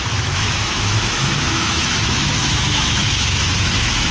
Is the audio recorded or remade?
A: remade